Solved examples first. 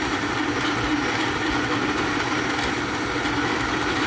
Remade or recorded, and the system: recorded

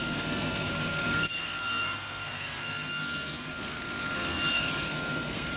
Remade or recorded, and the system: remade, codec, SNAC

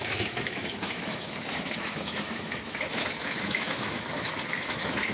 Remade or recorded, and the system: remade, autoencoder, DAC-VAE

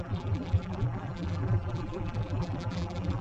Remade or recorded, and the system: remade, vocoder, BigVGAN v2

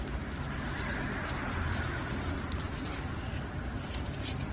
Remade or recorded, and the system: recorded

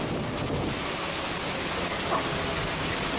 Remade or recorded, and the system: recorded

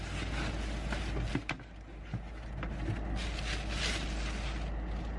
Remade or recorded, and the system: recorded